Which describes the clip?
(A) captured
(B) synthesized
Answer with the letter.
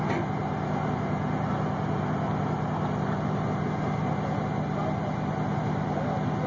A